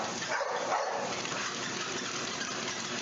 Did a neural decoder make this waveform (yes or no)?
yes